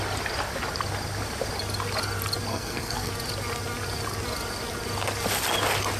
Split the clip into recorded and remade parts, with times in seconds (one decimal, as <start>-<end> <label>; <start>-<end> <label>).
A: 0.0-2.5 recorded; 2.5-3.1 remade; 3.1-6.0 recorded